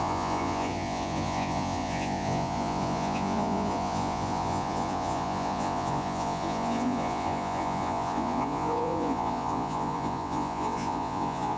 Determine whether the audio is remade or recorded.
remade